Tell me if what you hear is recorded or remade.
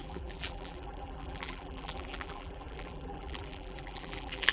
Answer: remade